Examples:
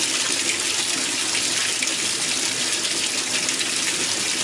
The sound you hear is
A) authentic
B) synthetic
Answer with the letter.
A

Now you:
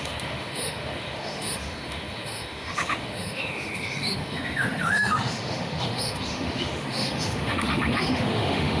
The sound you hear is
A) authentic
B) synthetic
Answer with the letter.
B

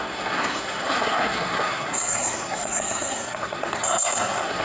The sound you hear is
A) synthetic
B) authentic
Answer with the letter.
A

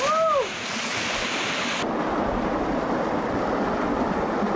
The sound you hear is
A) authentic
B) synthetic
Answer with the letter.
A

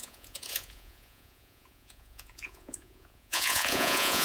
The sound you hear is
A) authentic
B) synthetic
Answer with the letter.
B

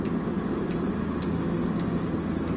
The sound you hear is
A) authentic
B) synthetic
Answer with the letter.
A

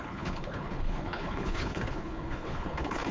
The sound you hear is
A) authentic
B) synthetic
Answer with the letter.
B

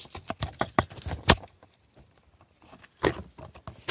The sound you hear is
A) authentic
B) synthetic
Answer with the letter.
A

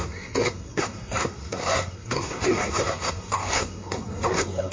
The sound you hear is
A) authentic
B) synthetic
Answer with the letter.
B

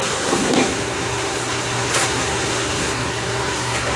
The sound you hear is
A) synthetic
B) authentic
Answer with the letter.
A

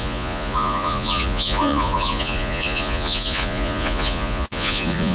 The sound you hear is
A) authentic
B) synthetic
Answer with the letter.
B